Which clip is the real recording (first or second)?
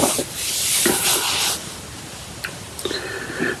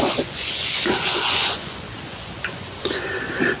first